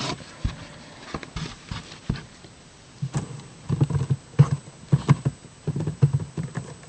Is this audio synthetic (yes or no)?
no